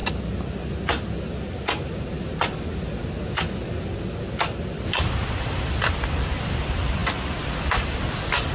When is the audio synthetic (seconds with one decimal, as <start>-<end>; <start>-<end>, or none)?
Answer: none